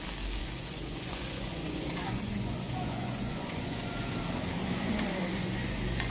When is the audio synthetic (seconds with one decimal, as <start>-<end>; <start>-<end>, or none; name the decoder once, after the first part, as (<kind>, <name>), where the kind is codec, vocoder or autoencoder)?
0.4-4.1 (vocoder, Vocos); 4.6-6.1